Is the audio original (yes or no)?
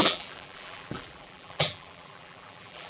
no